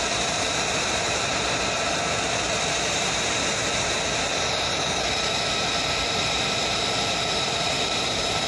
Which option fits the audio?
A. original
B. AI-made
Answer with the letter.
B